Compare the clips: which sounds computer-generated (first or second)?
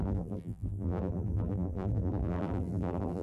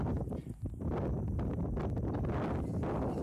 first